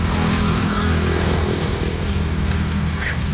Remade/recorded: remade